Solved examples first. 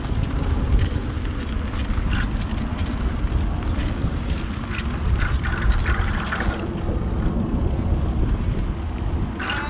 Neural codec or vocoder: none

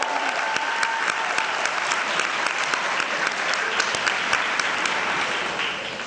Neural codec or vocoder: none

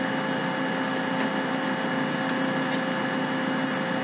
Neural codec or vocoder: none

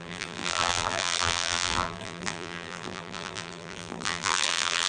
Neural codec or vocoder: vocoder, BigVGAN v2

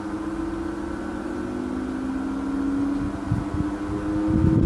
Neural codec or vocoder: none